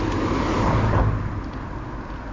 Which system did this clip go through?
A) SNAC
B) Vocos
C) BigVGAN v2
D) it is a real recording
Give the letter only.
C